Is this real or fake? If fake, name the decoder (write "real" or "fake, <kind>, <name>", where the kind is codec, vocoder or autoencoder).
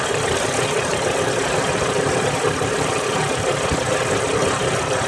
real